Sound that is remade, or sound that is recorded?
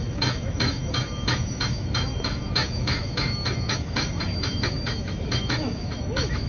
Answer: remade